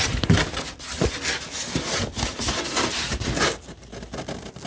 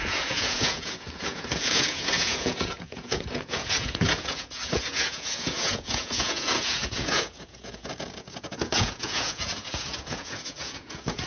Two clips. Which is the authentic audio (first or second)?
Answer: first